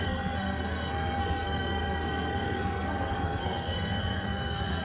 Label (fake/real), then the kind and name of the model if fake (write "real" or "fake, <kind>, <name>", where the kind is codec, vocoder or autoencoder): fake, codec, SNAC